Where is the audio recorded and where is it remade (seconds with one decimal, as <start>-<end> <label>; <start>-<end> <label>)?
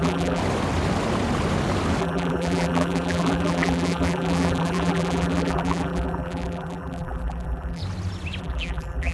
0.0-0.4 remade; 0.4-2.0 recorded; 2.0-7.8 remade; 7.8-8.4 recorded; 8.4-9.1 remade